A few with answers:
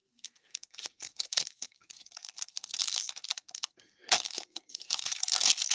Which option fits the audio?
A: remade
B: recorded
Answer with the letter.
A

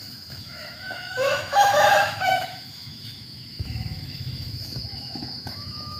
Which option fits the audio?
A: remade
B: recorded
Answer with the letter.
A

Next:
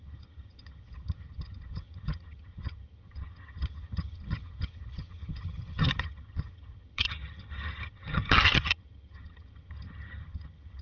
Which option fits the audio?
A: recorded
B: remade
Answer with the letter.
B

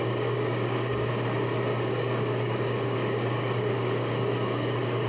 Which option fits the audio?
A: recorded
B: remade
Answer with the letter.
B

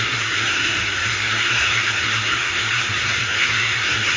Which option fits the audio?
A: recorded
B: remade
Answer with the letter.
B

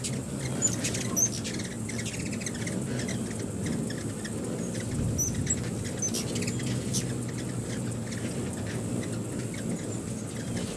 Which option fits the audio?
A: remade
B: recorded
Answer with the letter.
B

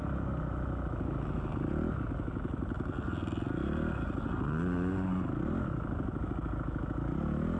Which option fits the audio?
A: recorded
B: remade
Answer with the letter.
A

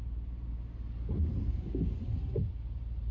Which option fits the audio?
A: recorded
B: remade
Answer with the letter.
A